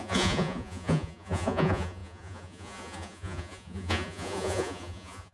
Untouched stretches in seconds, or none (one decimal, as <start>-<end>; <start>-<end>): none